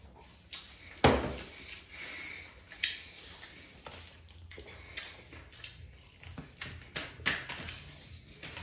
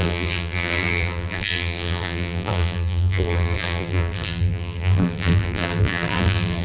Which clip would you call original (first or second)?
first